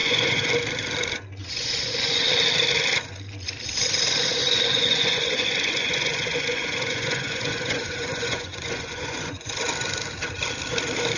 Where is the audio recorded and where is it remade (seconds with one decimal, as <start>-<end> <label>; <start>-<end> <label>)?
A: 0.0-0.5 remade; 0.5-1.4 recorded; 1.4-2.2 remade; 2.2-4.4 recorded; 4.4-9.5 remade; 9.5-11.2 recorded